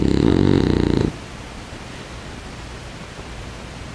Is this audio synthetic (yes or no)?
yes